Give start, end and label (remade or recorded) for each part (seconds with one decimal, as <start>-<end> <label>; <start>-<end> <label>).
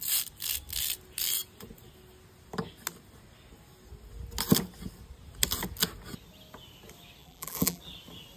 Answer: 0.0-7.2 recorded; 7.2-7.8 remade; 7.8-8.4 recorded